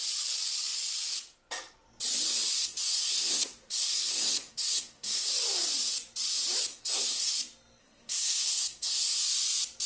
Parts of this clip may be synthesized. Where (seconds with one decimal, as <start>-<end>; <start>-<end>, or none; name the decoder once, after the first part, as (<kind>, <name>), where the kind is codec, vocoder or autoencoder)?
2.6-5.3 (codec, SNAC); 6.7-7.3; 7.8-9.2